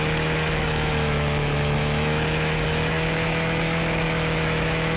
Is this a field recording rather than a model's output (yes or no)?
no